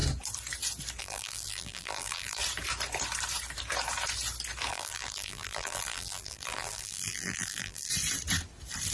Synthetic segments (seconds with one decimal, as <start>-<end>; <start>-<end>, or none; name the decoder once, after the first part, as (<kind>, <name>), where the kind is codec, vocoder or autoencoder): 1.0-2.4 (vocoder, BigVGAN v2); 4.7-7.9